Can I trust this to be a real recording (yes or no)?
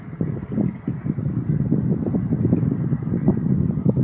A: yes